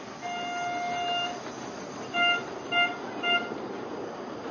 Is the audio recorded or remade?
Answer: recorded